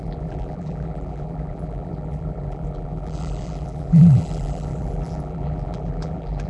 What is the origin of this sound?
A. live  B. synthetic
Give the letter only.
B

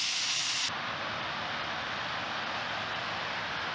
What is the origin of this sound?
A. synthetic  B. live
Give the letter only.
B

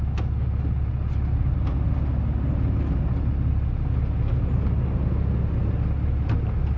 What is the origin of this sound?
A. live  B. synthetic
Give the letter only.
A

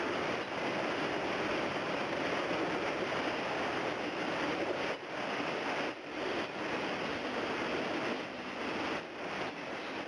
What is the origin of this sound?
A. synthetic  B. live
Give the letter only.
B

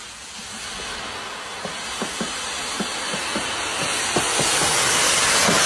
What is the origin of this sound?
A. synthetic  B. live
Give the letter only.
B